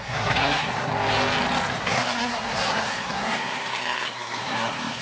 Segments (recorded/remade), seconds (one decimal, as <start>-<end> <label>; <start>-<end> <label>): 0.0-0.9 remade; 0.9-1.7 recorded; 1.7-5.0 remade